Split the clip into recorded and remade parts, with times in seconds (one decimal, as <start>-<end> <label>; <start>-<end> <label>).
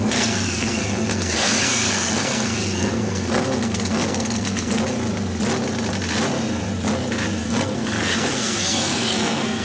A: 0.0-4.8 remade; 4.8-7.4 recorded; 7.4-9.6 remade